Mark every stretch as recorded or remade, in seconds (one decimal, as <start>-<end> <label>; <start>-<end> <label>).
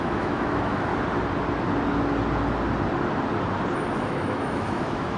0.0-0.9 remade; 0.9-4.0 recorded; 4.0-5.2 remade